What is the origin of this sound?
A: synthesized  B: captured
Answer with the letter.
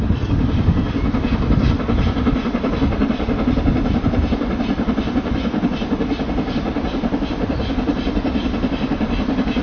A